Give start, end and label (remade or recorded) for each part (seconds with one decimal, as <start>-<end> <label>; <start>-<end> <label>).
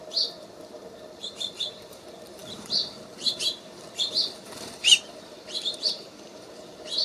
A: 0.0-1.2 recorded; 1.2-7.0 remade